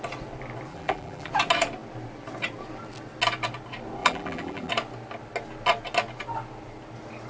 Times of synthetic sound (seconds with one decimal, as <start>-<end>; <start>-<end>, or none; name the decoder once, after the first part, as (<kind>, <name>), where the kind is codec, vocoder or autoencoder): 0.7-1.3 (vocoder, BigVGAN v2); 4.0-4.7